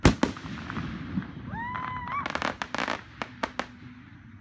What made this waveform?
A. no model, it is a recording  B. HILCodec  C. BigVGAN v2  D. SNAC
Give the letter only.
A